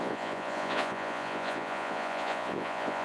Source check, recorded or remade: remade